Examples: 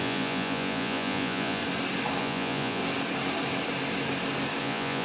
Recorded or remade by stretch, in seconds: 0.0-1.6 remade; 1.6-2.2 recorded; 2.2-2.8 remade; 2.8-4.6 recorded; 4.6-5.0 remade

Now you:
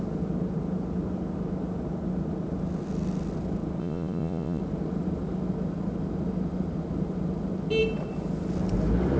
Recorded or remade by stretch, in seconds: 0.0-3.8 recorded; 3.8-4.6 remade; 4.6-9.2 recorded

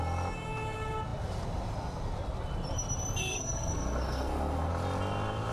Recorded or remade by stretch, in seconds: 0.0-3.3 recorded; 3.3-4.7 remade; 4.7-5.5 recorded

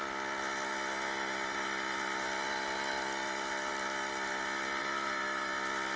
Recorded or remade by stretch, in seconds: 0.0-6.0 recorded

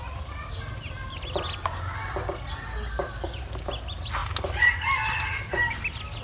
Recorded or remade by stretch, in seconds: 0.0-6.2 recorded

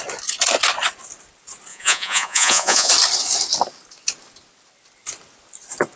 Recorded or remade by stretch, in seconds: 0.0-1.7 recorded; 1.7-2.9 remade; 2.9-6.0 recorded

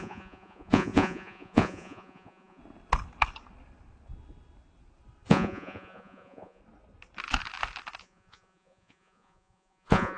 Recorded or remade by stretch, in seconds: 0.0-2.6 remade; 2.6-5.3 recorded; 5.3-6.6 remade; 6.6-8.0 recorded; 8.0-10.2 remade